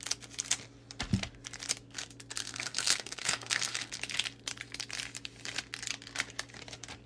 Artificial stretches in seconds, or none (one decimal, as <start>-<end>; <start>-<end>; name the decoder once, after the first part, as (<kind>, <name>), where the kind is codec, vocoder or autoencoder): 2.4-3.9 (codec, SNAC)